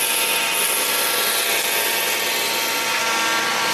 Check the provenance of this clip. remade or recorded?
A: recorded